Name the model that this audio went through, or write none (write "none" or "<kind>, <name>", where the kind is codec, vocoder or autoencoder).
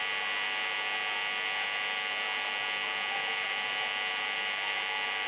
none